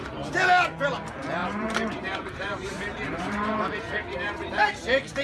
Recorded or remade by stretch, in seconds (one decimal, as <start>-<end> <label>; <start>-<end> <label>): 0.0-1.4 recorded; 1.4-4.5 remade; 4.5-5.2 recorded